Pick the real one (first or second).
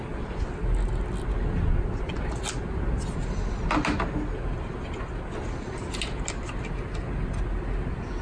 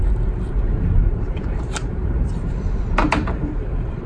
first